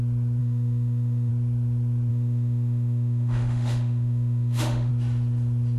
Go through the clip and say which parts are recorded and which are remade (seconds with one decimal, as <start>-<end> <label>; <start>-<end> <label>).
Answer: 0.0-0.4 recorded; 0.4-1.3 remade; 1.3-2.1 recorded; 2.1-4.9 remade; 4.9-5.8 recorded